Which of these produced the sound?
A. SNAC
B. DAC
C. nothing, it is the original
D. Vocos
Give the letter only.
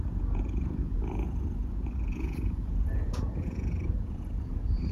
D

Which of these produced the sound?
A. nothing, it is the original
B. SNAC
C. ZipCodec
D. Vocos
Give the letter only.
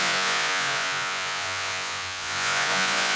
D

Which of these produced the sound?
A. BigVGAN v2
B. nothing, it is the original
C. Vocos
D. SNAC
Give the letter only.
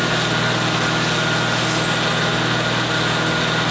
B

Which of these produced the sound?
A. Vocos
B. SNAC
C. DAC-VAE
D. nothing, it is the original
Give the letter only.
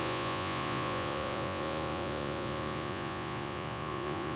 A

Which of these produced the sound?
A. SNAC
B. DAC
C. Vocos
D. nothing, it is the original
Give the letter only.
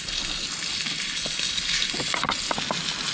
D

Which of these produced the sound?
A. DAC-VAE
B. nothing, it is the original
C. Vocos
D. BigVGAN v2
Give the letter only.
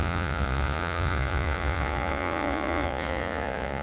C